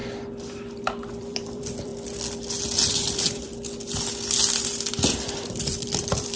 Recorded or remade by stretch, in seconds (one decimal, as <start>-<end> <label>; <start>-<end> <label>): 0.0-0.8 recorded; 0.8-1.9 remade; 1.9-2.9 recorded; 2.9-3.5 remade; 3.5-4.9 recorded; 4.9-6.4 remade

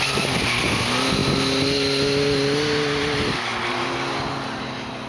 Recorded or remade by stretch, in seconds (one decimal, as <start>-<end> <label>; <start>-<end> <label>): 0.0-5.1 recorded